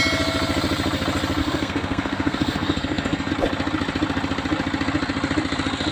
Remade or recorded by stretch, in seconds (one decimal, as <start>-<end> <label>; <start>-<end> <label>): 0.0-1.4 recorded; 1.4-3.3 remade; 3.3-5.9 recorded